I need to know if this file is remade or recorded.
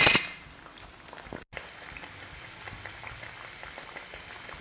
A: recorded